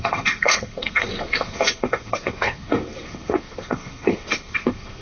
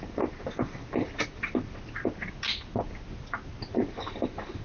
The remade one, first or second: first